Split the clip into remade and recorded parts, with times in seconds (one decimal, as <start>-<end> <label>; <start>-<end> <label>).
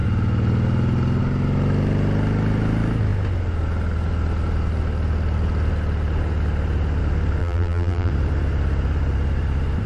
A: 0.0-7.4 recorded; 7.4-8.1 remade; 8.1-9.9 recorded